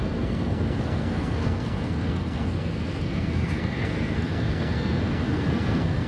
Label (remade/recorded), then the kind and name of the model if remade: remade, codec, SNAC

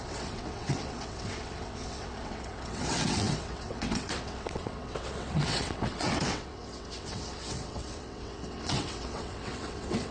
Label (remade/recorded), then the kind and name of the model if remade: remade, vocoder, WaveNeXt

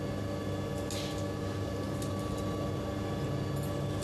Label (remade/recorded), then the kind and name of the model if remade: recorded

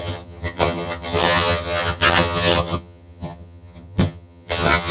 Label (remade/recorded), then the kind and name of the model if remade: remade, vocoder, HiFi-GAN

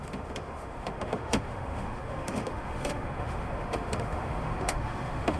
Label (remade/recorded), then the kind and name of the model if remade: remade, autoencoder, DAC-VAE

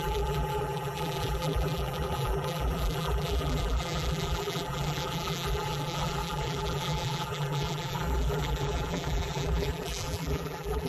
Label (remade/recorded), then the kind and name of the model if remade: remade, vocoder, BigVGAN v2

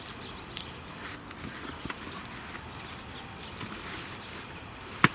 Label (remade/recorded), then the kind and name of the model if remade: recorded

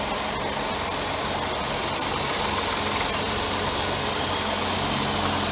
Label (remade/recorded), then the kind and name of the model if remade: recorded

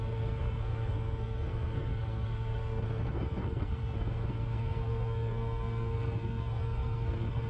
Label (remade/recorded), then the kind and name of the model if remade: remade, codec, SNAC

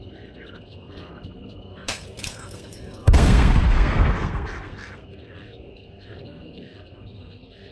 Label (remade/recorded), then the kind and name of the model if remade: remade, codec, SNAC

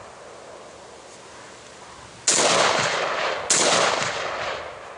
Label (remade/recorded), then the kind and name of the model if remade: recorded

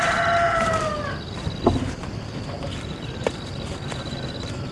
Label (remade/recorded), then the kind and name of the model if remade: recorded